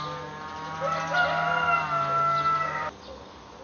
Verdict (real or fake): real